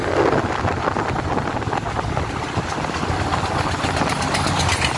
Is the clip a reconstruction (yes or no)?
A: no